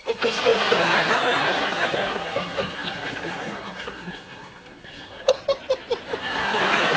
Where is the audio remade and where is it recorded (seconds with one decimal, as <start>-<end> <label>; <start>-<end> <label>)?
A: 0.0-5.4 remade; 5.4-6.2 recorded; 6.2-7.0 remade